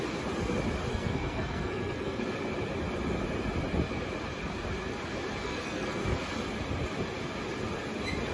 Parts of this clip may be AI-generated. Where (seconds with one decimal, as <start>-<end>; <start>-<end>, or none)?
0.9-2.2; 5.4-6.2